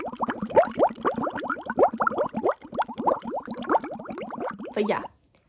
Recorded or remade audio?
recorded